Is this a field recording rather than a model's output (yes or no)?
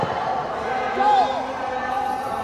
no